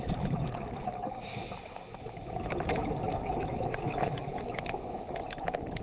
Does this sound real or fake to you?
fake